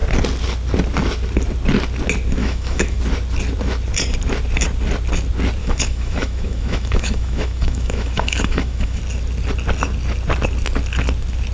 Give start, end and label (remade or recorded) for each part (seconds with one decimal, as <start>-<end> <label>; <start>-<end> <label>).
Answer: 0.0-2.4 recorded; 2.4-3.0 remade; 3.0-5.6 recorded; 5.6-9.0 remade; 9.0-11.5 recorded